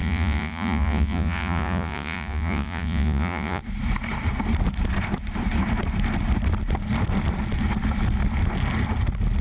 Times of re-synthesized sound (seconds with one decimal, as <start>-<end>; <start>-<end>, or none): 0.0-3.6